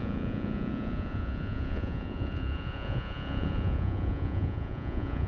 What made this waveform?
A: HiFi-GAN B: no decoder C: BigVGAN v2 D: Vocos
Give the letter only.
D